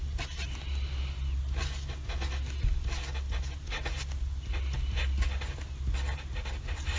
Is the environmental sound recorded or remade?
recorded